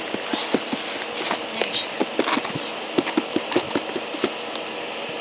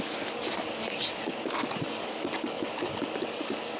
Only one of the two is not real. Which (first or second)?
second